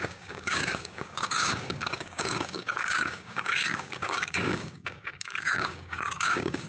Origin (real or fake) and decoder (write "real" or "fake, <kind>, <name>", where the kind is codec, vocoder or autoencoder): fake, codec, DAC